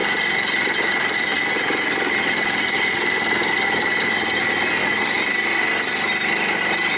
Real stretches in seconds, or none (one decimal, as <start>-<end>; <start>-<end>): 0.0-7.0